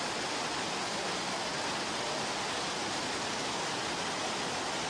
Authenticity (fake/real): real